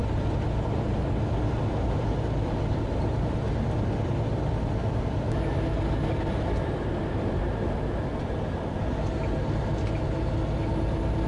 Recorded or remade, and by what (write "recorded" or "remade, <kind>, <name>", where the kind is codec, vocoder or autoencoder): recorded